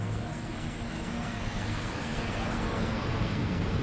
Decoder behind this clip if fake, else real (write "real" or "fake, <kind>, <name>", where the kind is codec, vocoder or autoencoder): fake, codec, SNAC